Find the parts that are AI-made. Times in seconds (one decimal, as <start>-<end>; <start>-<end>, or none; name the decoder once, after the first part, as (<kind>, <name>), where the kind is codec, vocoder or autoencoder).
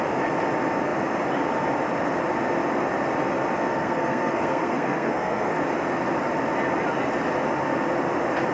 3.7-5.6 (codec, SNAC)